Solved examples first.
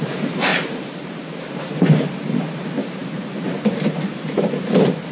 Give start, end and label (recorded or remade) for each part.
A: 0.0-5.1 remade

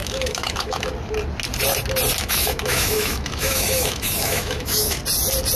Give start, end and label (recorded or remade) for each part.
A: 0.0-0.9 remade; 0.9-2.2 recorded; 2.2-5.0 remade; 5.0-5.6 recorded

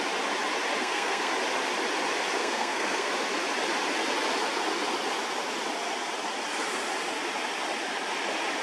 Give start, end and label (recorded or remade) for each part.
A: 0.0-0.8 recorded; 0.8-1.3 remade; 1.3-2.4 recorded; 2.4-3.1 remade; 3.1-8.6 recorded

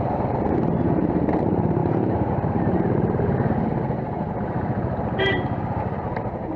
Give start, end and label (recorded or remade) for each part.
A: 0.0-6.6 remade

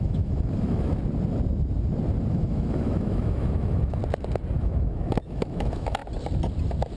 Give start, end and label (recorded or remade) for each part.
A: 0.0-1.0 remade; 1.0-2.3 recorded; 2.3-4.0 remade; 4.0-4.6 recorded; 4.6-6.0 remade; 6.0-7.0 recorded

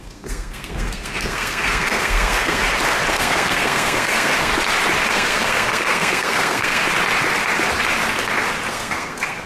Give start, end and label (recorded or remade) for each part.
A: 0.0-2.6 remade; 2.6-3.1 recorded; 3.1-4.5 remade; 4.5-5.1 recorded; 5.1-6.8 remade; 6.8-8.7 recorded; 8.7-9.5 remade

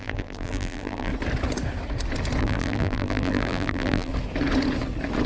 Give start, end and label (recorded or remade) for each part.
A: 0.0-1.1 remade; 1.1-2.4 recorded; 2.4-4.1 remade; 4.1-5.3 recorded

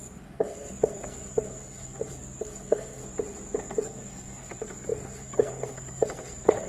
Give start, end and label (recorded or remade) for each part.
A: 0.0-3.0 remade; 3.0-3.6 recorded; 3.6-6.7 remade